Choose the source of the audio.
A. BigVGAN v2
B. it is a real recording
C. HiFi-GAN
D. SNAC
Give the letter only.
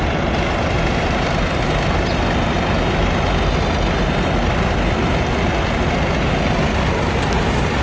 B